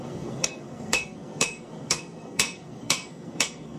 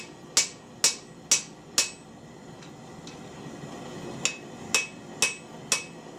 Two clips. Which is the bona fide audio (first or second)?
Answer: second